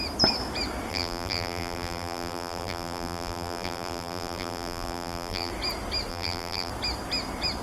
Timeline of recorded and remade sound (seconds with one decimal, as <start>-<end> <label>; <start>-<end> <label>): 0.0-0.9 recorded; 0.9-5.5 remade; 5.5-6.1 recorded; 6.1-6.7 remade; 6.7-7.6 recorded